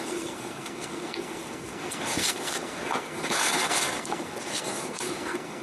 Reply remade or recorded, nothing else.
remade